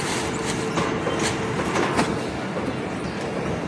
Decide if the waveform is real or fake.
real